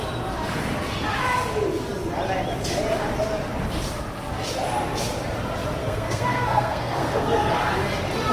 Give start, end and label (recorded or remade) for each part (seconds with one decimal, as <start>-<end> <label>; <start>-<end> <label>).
0.0-5.8 recorded; 5.8-7.5 remade; 7.5-8.3 recorded

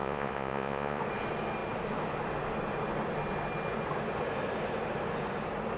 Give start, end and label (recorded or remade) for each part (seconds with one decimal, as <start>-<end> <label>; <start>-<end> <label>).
0.0-1.0 remade; 1.0-5.8 recorded

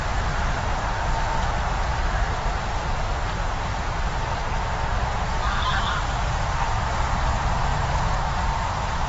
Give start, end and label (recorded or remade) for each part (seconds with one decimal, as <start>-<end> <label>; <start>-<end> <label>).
0.0-9.1 recorded

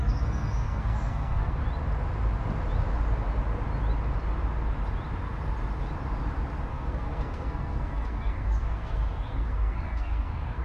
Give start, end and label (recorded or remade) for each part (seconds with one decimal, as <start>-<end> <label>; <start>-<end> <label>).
0.0-1.6 remade; 1.6-6.7 recorded; 6.7-10.6 remade

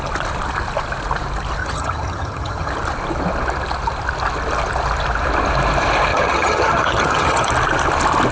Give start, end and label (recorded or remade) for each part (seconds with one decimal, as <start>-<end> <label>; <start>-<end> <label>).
0.0-1.6 recorded; 1.6-2.7 remade; 2.7-6.1 recorded; 6.1-7.5 remade; 7.5-8.3 recorded

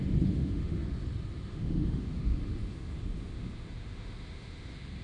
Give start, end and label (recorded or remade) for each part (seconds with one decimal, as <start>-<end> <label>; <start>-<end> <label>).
0.0-0.8 remade; 0.8-1.5 recorded; 1.5-5.0 remade